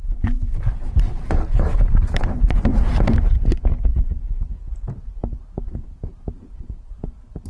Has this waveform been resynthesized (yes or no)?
yes